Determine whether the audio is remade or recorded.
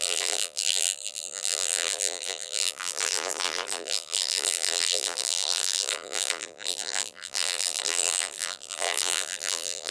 remade